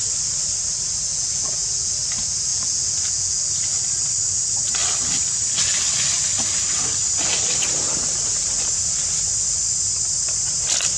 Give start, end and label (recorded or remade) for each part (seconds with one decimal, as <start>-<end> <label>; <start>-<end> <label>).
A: 0.0-1.1 recorded; 1.1-1.9 remade; 1.9-2.5 recorded; 2.5-3.4 remade; 3.4-11.0 recorded